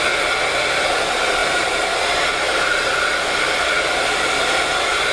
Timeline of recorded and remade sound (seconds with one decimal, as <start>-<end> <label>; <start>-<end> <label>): 0.0-5.1 recorded